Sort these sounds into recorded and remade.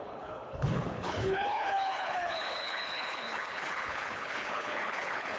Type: remade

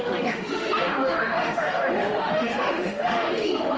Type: remade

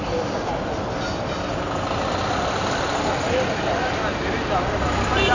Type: recorded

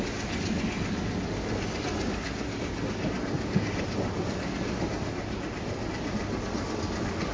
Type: recorded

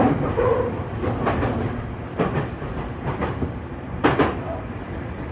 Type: remade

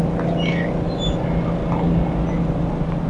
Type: recorded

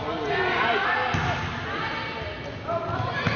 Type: recorded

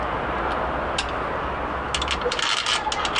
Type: recorded